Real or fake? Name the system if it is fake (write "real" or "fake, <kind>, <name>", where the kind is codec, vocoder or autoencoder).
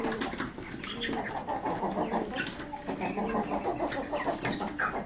real